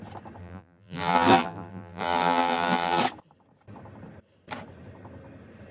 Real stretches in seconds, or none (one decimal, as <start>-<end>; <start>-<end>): 0.0-0.4; 3.0-5.7